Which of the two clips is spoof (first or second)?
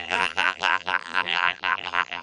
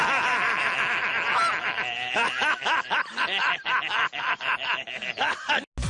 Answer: first